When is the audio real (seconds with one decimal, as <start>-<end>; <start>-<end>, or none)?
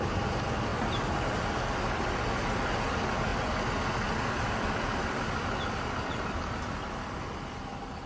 0.0-8.1